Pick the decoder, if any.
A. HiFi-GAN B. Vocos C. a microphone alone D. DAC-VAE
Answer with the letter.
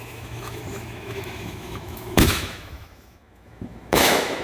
D